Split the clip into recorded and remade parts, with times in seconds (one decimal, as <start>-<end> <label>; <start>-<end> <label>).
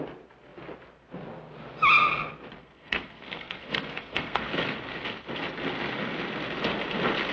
0.0-2.6 recorded; 2.6-4.4 remade; 4.4-7.3 recorded